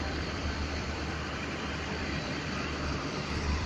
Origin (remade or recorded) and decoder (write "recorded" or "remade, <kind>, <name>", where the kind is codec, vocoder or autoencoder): remade, vocoder, BigVGAN v2